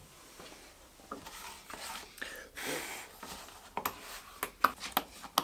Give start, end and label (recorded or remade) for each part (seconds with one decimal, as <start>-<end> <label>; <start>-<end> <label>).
0.0-5.4 recorded

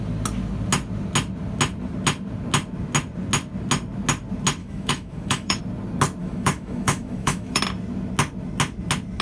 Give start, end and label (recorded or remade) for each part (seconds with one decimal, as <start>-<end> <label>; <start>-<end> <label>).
0.0-4.6 recorded; 4.6-5.6 remade; 5.6-6.2 recorded; 6.2-7.6 remade; 7.6-9.2 recorded

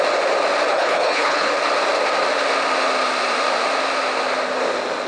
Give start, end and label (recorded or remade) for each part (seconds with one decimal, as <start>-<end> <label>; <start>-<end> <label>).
0.0-0.7 recorded; 0.7-1.5 remade; 1.5-5.1 recorded

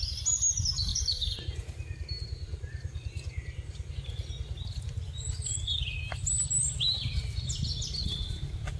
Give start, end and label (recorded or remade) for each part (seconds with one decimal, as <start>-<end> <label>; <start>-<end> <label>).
0.0-0.9 recorded; 0.9-3.9 remade; 3.9-8.8 recorded

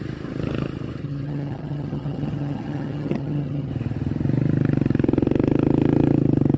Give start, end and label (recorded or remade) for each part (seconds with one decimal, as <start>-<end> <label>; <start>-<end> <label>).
0.0-1.0 recorded; 1.0-3.7 remade; 3.7-6.6 recorded

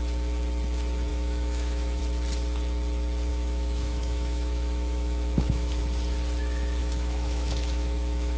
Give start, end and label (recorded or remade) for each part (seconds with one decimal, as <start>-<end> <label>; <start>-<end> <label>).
0.0-1.1 recorded; 1.1-2.0 remade; 2.0-3.3 recorded; 3.3-5.8 remade; 5.8-6.8 recorded; 6.8-8.4 remade

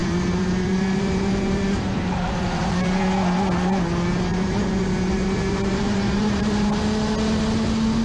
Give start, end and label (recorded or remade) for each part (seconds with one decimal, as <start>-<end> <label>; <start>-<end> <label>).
0.0-3.0 remade; 3.0-4.3 recorded; 4.3-6.8 remade; 6.8-8.0 recorded